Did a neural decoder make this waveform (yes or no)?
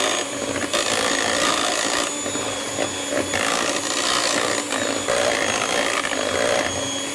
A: no